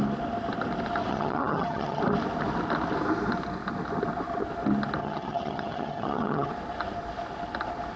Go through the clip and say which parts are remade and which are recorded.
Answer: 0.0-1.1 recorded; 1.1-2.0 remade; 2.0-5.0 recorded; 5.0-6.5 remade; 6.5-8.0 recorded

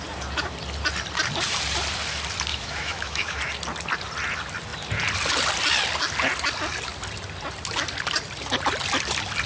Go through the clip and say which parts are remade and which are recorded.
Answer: 0.0-2.5 recorded; 2.5-3.4 remade; 3.4-9.5 recorded

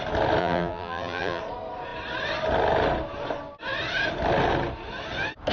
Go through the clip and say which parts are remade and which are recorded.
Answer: 0.0-0.4 recorded; 0.4-1.4 remade; 1.4-5.5 recorded